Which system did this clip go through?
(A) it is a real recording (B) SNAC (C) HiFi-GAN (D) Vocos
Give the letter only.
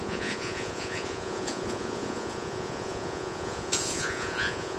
D